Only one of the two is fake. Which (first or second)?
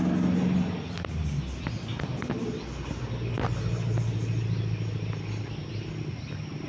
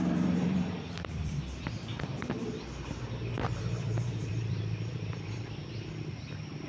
second